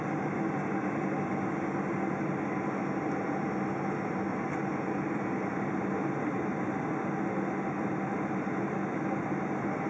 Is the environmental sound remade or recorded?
recorded